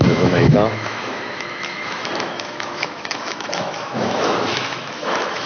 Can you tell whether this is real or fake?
fake